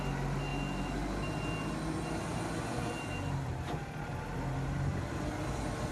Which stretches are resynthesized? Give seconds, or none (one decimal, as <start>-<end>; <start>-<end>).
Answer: none